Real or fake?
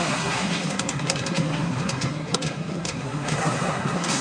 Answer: fake